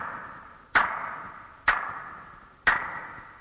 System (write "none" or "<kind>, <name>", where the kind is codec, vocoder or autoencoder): none